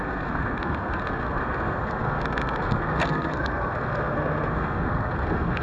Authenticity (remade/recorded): remade